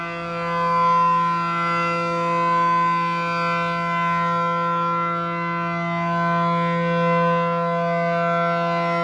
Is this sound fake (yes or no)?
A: no